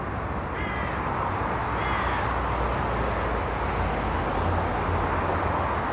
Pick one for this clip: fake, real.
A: real